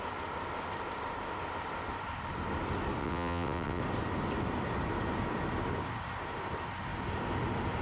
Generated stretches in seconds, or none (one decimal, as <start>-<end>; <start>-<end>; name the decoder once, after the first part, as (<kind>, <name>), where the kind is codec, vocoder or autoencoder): 3.0-3.8 (vocoder, WaveNeXt)